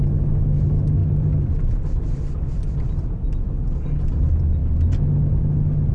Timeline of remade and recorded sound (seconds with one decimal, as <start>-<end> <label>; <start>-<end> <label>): 0.0-1.0 recorded; 1.0-3.4 remade; 3.4-5.9 recorded